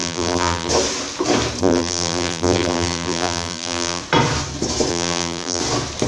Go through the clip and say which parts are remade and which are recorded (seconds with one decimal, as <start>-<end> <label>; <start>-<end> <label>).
0.0-0.7 remade; 0.7-1.6 recorded; 1.6-4.0 remade; 4.0-4.9 recorded; 4.9-5.6 remade; 5.6-6.1 recorded